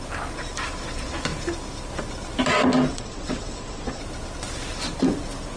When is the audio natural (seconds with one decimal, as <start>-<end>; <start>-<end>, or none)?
0.0-2.9; 4.0-5.6